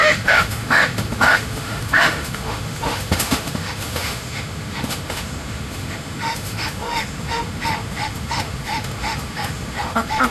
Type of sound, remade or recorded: remade